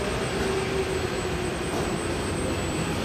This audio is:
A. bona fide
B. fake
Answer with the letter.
A